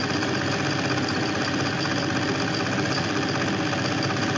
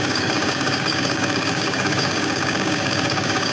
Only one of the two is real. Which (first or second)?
first